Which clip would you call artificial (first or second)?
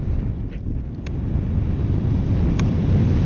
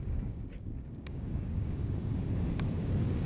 second